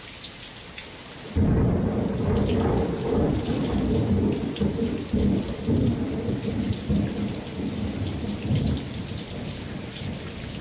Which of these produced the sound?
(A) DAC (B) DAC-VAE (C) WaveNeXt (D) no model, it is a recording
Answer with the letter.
D